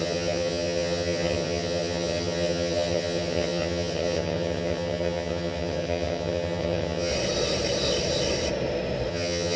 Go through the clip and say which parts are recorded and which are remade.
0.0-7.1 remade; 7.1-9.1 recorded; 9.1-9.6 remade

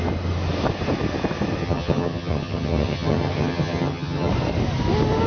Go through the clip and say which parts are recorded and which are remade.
0.0-1.6 recorded; 1.6-4.3 remade; 4.3-5.3 recorded

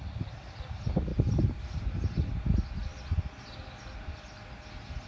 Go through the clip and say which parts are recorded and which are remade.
0.0-5.1 recorded

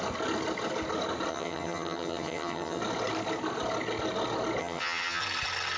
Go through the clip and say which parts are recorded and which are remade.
0.0-1.3 recorded; 1.3-2.8 remade; 2.8-4.6 recorded; 4.6-5.2 remade; 5.2-5.8 recorded

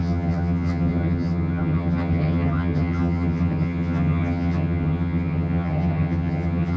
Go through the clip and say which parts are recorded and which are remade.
0.0-6.8 remade

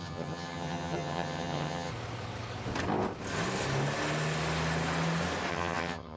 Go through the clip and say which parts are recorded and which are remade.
0.0-1.9 remade; 1.9-5.5 recorded; 5.5-6.2 remade

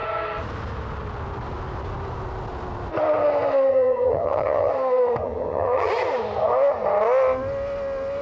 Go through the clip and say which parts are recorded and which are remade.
0.0-3.7 recorded; 3.7-4.7 remade; 4.7-5.2 recorded; 5.2-5.9 remade; 5.9-8.2 recorded